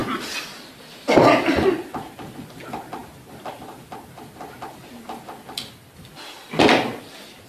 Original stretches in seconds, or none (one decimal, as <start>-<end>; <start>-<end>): 0.0-7.5